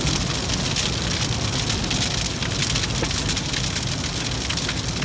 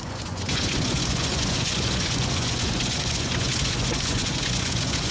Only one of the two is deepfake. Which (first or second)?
second